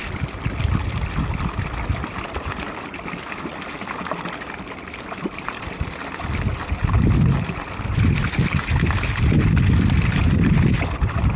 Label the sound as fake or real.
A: real